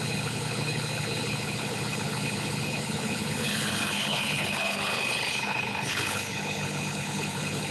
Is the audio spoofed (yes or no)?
yes